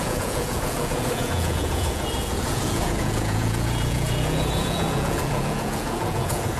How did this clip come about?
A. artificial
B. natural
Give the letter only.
A